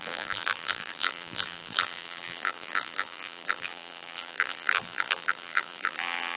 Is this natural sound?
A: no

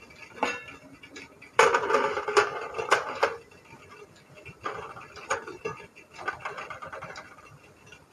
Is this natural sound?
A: no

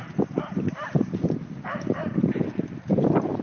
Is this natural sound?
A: no